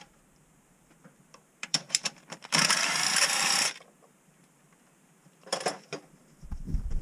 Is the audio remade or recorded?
remade